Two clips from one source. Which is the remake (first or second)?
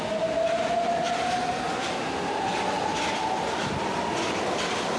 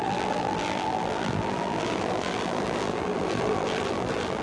second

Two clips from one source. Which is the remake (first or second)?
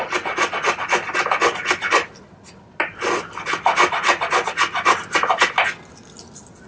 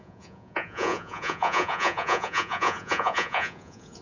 second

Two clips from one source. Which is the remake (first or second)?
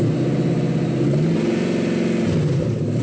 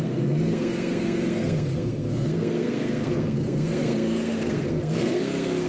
second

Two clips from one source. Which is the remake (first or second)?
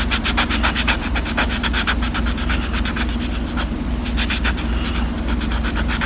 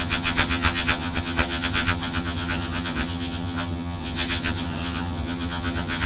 second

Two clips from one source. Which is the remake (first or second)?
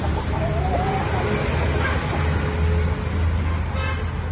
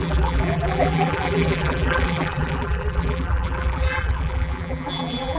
second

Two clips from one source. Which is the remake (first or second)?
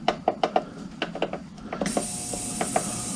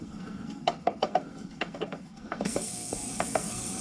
second